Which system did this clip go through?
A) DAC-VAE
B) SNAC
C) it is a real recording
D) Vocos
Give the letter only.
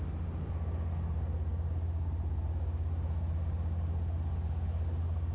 C